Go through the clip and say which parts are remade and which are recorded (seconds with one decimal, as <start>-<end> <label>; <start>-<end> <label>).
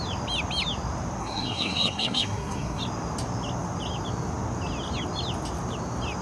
0.0-1.2 recorded; 1.2-2.8 remade; 2.8-6.2 recorded